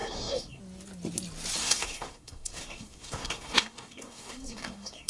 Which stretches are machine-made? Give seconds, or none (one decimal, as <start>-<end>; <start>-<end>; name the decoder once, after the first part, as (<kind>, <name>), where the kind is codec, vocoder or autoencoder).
0.0-0.6 (codec, SNAC); 1.6-5.1